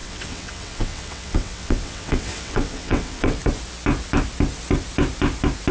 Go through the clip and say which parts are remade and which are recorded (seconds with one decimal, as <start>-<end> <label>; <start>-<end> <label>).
0.0-3.4 remade; 3.4-5.7 recorded